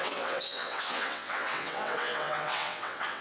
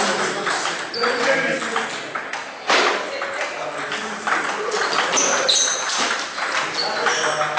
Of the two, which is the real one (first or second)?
second